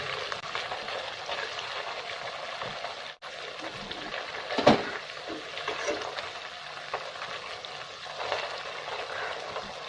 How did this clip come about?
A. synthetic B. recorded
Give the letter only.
B